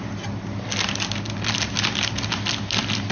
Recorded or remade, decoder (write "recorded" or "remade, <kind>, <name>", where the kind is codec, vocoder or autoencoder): recorded